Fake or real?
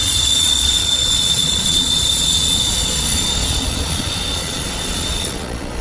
fake